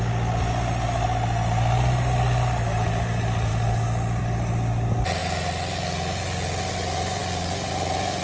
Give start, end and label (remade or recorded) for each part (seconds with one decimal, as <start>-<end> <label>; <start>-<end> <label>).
0.0-8.2 recorded